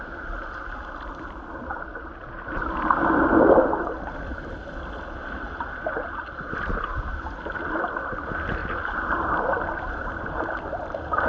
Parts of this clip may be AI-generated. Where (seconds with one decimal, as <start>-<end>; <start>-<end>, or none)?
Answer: 6.9-7.5; 8.6-11.3